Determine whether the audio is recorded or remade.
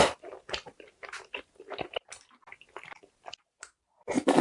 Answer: recorded